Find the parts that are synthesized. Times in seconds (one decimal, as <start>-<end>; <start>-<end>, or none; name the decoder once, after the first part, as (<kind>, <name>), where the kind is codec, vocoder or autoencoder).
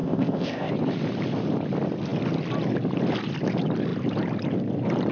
0.0-0.7 (codec, ZipCodec)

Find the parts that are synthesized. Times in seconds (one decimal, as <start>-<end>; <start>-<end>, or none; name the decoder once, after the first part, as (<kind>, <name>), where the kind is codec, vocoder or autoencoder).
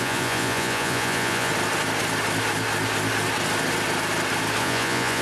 0.0-1.5 (vocoder, Vocos); 4.6-5.2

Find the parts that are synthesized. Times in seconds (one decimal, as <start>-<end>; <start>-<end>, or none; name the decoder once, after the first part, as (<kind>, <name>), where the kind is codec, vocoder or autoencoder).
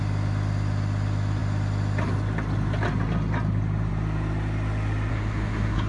5.1-5.9 (codec, SNAC)